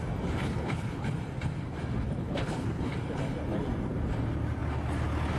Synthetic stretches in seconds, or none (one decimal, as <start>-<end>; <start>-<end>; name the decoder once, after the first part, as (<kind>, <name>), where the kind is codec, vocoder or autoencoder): 0.4-1.0 (codec, HILCodec); 2.2-2.9

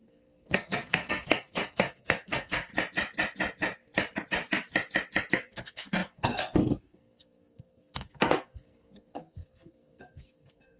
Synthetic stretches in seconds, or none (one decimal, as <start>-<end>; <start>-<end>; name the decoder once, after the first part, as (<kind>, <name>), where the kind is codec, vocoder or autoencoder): 0.0-2.7 (codec, SNAC); 5.3-10.8